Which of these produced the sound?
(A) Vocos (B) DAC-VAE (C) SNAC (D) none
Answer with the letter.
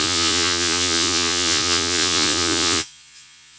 A